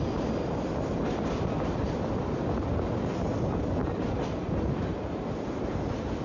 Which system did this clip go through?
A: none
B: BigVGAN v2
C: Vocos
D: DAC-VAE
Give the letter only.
A